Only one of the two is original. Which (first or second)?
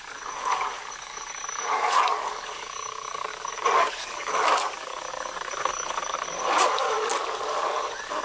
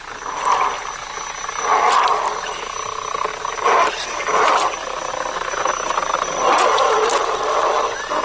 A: second